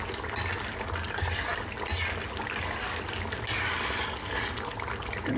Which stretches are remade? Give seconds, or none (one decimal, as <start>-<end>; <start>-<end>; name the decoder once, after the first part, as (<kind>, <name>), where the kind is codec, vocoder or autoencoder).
none

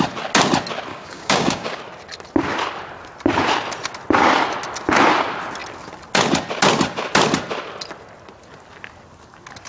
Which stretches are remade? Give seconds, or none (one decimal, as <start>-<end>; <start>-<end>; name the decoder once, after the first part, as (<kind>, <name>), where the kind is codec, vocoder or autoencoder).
0.9-1.8 (codec, DAC)

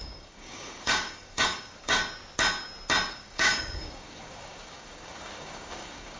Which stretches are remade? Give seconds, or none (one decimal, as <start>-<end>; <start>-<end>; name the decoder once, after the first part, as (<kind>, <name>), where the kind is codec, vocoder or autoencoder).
0.0-2.0 (codec, DAC); 3.1-6.2